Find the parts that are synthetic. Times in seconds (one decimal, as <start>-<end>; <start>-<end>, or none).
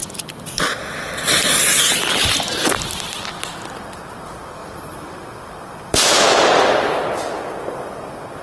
0.0-7.0